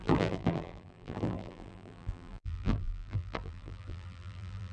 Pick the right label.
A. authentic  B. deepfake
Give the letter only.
B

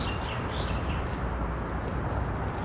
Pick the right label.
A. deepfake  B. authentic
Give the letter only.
B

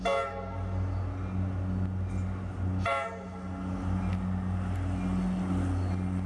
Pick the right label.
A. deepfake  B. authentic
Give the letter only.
B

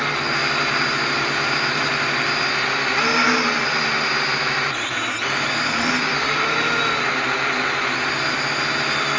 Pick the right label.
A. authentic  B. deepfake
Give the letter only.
A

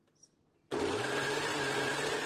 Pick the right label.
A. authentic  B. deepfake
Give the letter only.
A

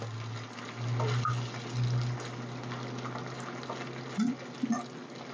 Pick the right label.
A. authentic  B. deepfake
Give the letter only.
A